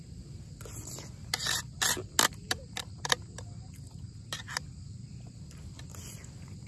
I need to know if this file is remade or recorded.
recorded